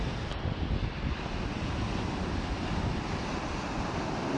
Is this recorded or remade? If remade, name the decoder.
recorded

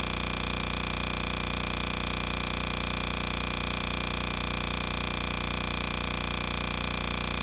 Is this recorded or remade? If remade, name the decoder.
remade, vocoder, BigVGAN v2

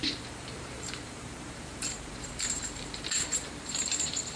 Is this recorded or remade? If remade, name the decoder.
remade, vocoder, BigVGAN v2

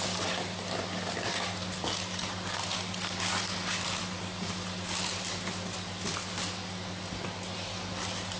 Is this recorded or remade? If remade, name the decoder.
recorded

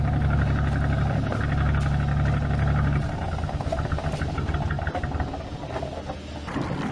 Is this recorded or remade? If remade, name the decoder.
recorded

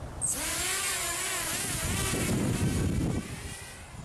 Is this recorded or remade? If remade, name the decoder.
recorded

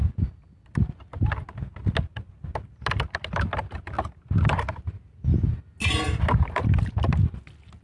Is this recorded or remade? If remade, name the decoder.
recorded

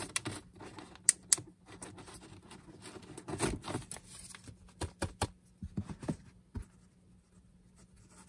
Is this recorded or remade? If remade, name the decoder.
recorded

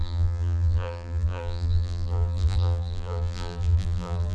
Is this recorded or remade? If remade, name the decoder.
remade, vocoder, BigVGAN v2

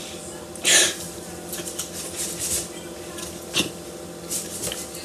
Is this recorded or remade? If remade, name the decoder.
recorded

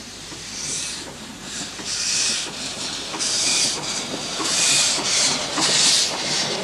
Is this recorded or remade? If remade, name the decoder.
remade, vocoder, BigVGAN v2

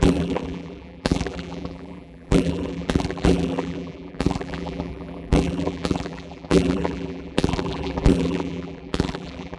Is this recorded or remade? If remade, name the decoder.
remade, vocoder, BigVGAN v2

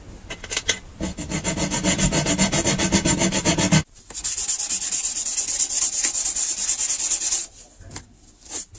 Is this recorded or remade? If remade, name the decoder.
recorded